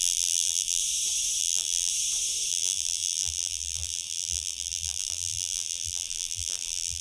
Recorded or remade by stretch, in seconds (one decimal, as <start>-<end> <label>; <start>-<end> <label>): 0.0-0.8 remade; 0.8-1.4 recorded; 1.4-1.9 remade; 1.9-2.5 recorded; 2.5-7.0 remade